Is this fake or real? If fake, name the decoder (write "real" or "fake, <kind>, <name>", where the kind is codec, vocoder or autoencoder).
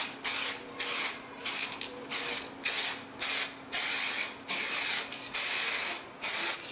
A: real